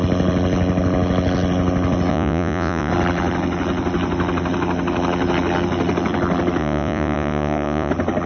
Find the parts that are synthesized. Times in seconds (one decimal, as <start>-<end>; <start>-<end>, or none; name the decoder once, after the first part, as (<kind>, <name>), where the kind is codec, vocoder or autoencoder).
2.1-2.9 (vocoder, Vocos); 6.6-7.9